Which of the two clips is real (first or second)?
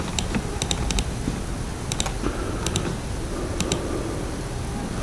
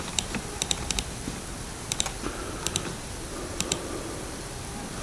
first